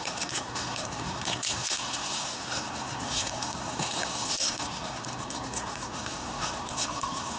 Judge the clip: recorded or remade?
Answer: remade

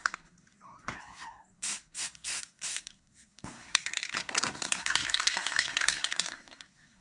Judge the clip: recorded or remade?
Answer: remade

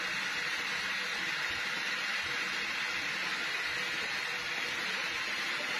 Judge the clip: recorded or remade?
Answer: recorded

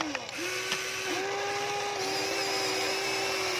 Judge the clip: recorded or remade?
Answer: recorded